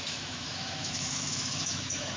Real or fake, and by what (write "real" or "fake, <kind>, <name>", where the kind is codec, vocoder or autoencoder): fake, autoencoder, DAC-VAE